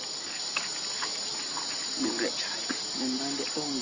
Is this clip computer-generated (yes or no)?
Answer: no